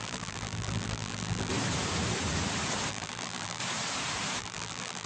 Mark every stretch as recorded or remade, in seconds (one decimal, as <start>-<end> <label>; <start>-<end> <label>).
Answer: 0.0-1.5 remade; 1.5-2.9 recorded; 2.9-3.6 remade; 3.6-4.4 recorded; 4.4-5.1 remade